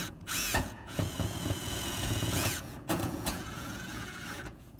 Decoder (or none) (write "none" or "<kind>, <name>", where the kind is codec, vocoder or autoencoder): vocoder, Vocos